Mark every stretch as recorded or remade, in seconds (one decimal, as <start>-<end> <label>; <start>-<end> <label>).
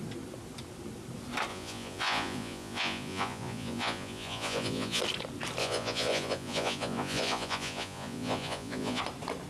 0.0-1.5 recorded; 1.5-5.0 remade; 5.0-5.6 recorded; 5.6-9.0 remade; 9.0-9.5 recorded